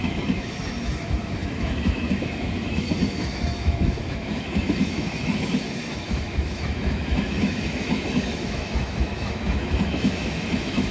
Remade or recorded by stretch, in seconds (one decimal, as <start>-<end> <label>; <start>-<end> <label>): 0.0-10.9 remade